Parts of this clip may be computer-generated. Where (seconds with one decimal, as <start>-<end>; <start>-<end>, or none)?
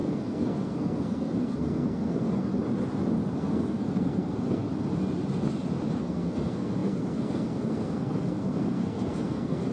0.0-2.5; 3.3-4.6; 6.0-9.7